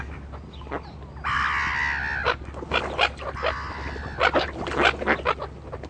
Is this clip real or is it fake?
real